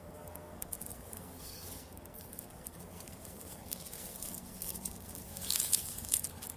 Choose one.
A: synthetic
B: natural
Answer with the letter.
A